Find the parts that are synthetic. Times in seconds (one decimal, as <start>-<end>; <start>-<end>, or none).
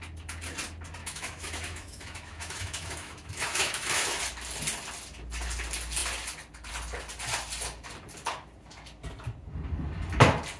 1.0-4.2